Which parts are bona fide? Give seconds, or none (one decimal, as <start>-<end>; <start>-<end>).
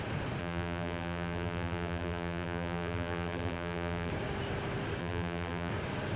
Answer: 0.0-0.4; 4.1-5.0; 5.7-6.2